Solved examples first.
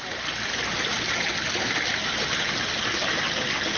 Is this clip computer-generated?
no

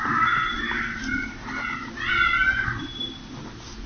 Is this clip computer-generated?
no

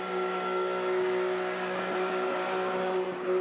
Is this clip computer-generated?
yes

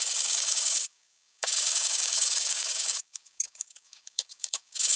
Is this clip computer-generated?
yes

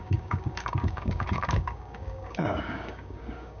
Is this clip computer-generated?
yes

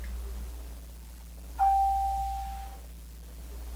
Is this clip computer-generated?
no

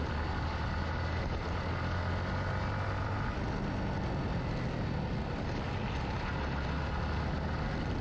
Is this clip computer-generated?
no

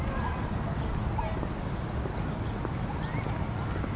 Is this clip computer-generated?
no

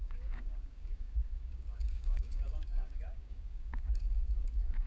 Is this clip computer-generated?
yes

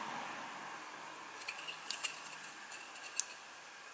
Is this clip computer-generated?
no